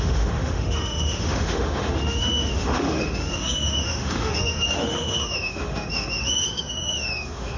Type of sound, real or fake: fake